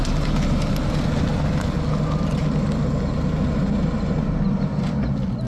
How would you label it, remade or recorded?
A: recorded